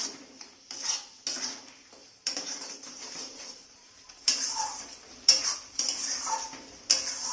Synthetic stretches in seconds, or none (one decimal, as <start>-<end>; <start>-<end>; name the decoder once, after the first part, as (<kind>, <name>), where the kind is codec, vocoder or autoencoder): 2.0-5.8 (vocoder, BigVGAN v2)